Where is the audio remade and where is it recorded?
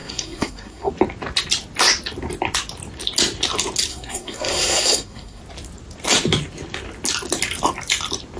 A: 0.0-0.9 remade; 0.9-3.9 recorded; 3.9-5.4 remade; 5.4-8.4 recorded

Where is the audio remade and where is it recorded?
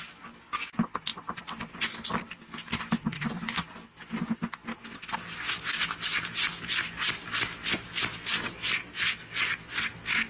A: 0.0-10.3 recorded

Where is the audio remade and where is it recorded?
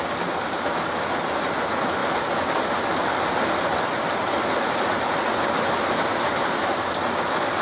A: 0.0-7.6 recorded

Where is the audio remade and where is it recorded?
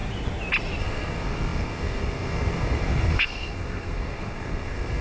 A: 0.0-0.8 recorded; 0.8-5.0 remade